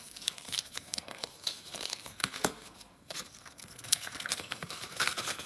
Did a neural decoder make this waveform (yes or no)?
yes